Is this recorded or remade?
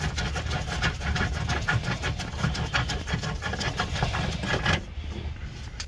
recorded